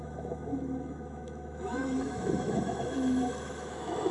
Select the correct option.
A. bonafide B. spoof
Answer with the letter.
B